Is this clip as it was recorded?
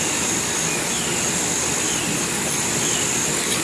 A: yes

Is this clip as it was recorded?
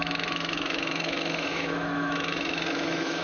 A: no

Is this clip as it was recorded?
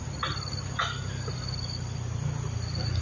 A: yes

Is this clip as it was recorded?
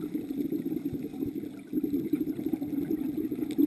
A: yes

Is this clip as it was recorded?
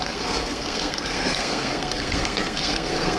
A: no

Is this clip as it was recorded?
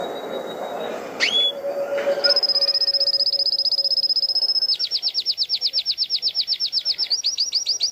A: yes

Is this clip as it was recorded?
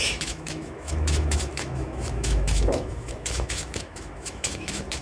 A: no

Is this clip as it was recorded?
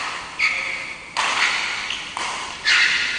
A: yes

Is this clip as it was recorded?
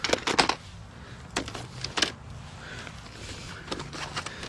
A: yes